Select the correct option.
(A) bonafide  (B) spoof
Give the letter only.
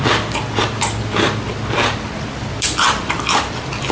A